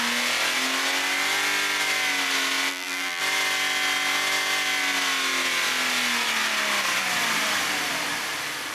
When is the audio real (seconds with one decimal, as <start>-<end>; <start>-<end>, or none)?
0.0-2.7; 3.2-8.7